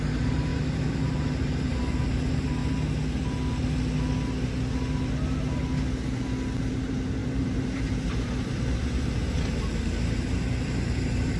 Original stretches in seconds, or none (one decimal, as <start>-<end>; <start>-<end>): 2.6-6.6